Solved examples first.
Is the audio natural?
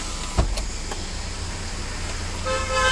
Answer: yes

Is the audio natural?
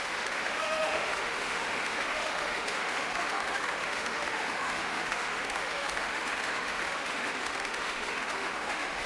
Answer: no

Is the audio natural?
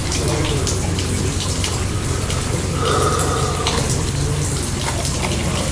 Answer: yes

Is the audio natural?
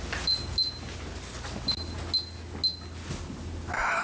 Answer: yes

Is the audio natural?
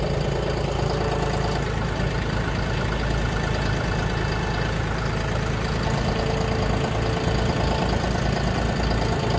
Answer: yes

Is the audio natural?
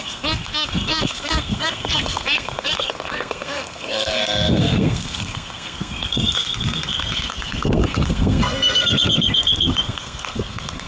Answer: no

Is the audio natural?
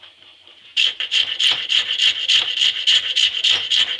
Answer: no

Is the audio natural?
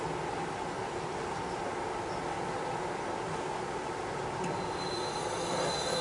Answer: yes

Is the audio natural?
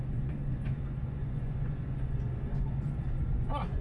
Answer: no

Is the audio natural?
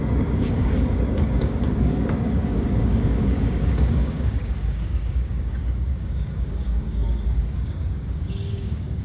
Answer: no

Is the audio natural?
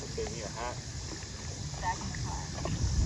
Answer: yes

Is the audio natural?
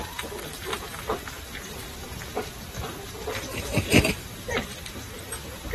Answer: no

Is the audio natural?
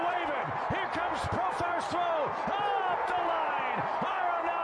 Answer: yes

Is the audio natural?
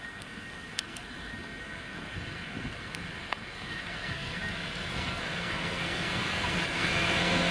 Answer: no